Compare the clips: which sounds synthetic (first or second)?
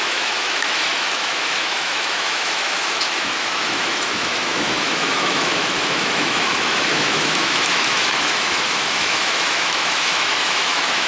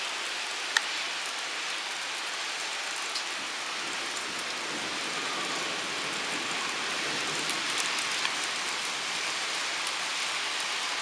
first